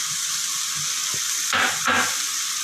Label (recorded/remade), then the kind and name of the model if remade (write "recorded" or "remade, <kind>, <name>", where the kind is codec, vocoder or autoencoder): recorded